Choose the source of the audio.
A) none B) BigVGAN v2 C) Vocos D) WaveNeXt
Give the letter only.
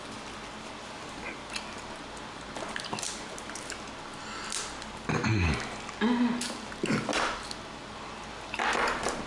A